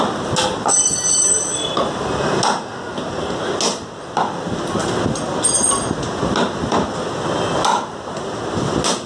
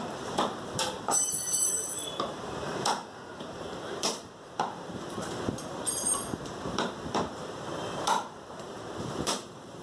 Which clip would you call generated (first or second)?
second